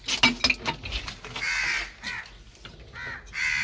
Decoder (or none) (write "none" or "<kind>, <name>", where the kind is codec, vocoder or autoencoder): none